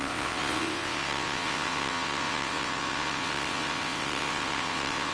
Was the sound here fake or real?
fake